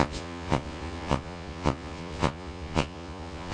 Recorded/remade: remade